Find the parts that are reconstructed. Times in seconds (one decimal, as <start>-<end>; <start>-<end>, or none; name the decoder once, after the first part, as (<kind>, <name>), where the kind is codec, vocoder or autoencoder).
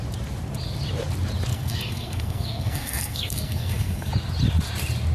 1.5-4.1 (codec, SNAC)